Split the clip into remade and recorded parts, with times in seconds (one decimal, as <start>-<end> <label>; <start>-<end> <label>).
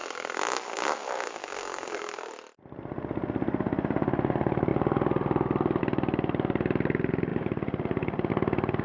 0.0-2.3 remade; 2.3-8.8 recorded